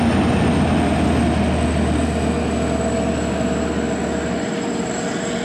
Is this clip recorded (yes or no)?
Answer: yes